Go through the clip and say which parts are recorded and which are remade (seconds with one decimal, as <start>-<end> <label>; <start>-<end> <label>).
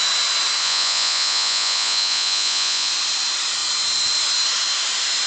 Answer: 0.0-0.6 recorded; 0.6-2.9 remade; 2.9-5.3 recorded